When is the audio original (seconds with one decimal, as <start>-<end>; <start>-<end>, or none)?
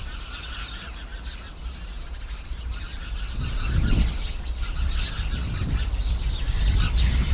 0.0-7.3